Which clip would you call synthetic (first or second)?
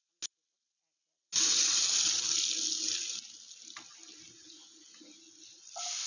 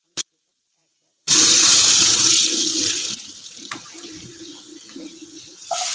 second